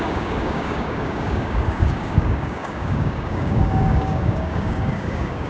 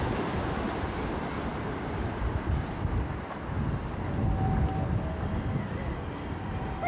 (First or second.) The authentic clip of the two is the second